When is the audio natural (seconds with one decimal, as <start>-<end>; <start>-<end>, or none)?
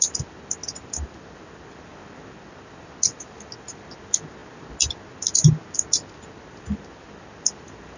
0.0-8.0